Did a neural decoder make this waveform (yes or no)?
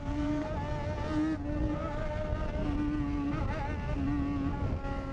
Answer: no